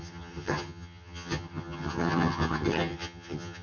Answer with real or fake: fake